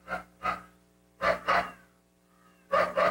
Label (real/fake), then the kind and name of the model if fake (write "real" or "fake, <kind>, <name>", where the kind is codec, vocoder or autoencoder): real